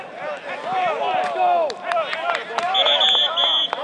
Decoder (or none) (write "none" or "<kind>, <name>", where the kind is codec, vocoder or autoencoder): none